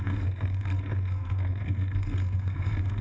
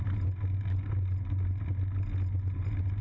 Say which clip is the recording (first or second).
second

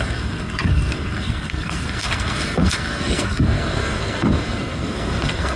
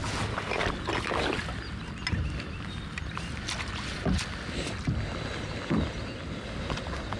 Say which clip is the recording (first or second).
second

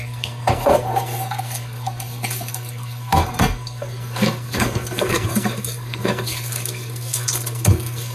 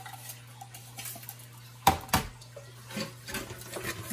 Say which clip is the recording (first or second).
second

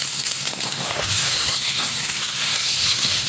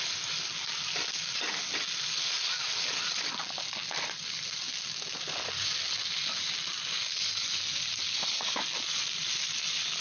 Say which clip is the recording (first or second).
second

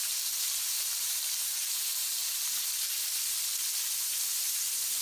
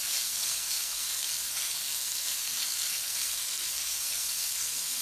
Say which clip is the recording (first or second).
first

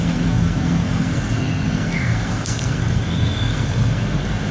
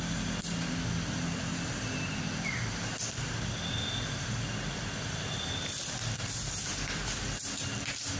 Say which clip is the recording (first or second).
second